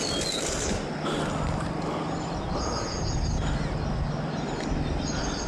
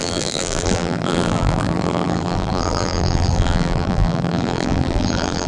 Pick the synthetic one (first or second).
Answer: second